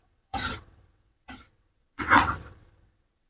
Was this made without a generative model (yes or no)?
no